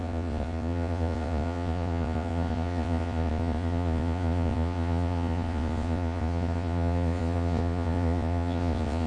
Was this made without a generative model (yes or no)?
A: no